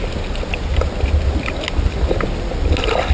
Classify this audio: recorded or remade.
recorded